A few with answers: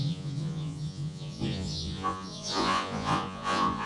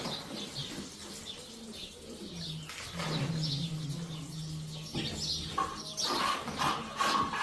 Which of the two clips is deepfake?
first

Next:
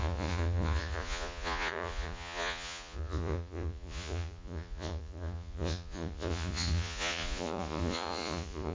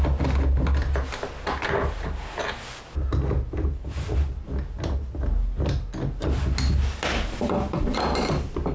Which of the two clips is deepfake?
first